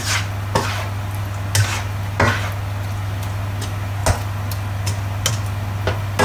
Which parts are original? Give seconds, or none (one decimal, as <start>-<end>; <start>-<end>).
0.0-6.2